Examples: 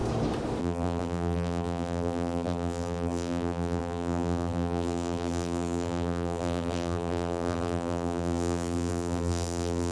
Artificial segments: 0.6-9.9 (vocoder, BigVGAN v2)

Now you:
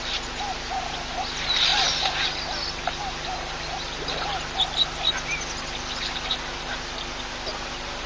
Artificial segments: none

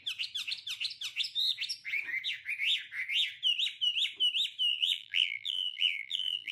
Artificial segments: 4.7-6.5 (vocoder, BigVGAN v2)